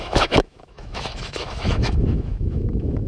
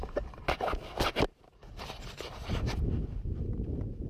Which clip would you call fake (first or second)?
first